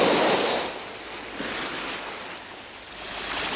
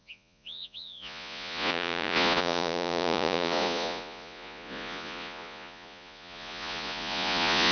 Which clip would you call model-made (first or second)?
second